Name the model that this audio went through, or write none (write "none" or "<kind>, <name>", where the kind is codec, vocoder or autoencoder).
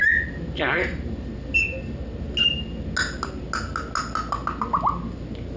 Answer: none